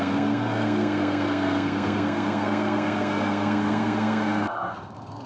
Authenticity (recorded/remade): remade